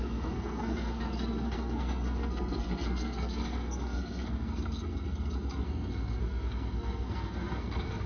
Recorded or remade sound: remade